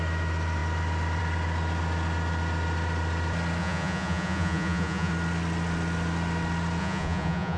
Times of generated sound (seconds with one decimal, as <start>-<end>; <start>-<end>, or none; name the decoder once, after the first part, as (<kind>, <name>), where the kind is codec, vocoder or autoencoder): 3.6-5.1 (vocoder, Vocos); 6.8-7.6